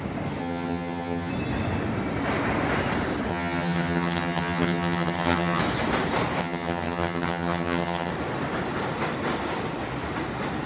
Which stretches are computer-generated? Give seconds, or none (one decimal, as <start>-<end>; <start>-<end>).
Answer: 0.4-1.3; 3.3-5.6; 6.4-8.1